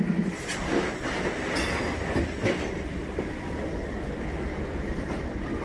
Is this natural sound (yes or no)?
yes